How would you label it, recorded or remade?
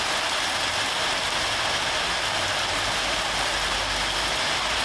recorded